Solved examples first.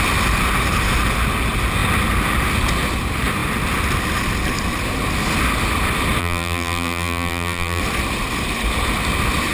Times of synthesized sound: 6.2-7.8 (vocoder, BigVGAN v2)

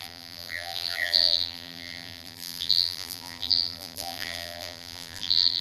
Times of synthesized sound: 0.0-5.6 (vocoder, BigVGAN v2)

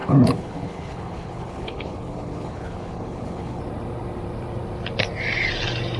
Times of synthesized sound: 0.0-3.6 (codec, HILCodec)